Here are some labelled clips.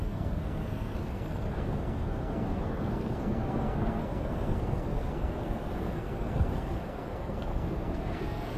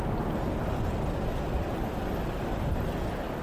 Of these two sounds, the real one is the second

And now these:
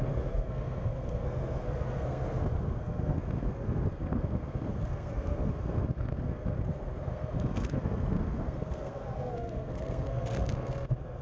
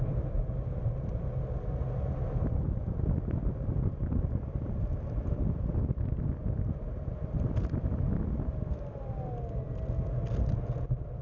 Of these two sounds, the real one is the second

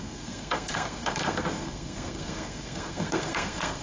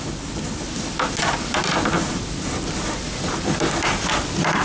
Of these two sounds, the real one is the second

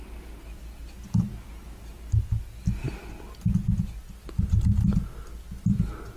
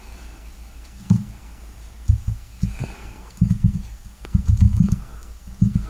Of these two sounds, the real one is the first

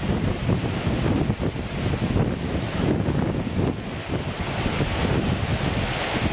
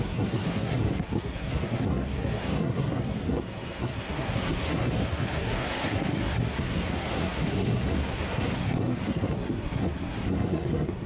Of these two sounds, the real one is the first